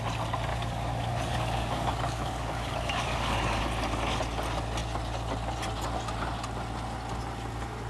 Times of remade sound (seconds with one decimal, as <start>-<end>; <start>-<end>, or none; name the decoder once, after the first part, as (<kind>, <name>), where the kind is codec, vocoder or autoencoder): 0.5-3.6 (codec, DAC)